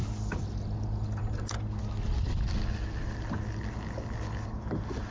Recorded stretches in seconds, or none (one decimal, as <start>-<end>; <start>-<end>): 0.0-5.1